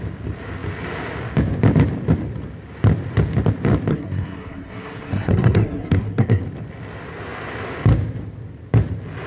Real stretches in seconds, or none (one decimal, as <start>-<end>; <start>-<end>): 0.0-3.9; 6.4-9.3